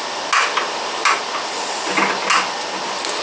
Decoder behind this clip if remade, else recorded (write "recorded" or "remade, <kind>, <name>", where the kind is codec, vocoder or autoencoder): recorded